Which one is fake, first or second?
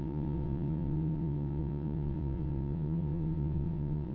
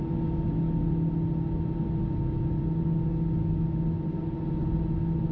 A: first